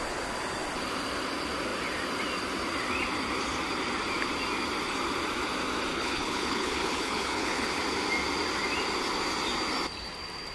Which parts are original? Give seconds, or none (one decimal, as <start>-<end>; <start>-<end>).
0.0-5.9; 7.8-10.5